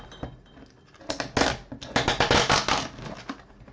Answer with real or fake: real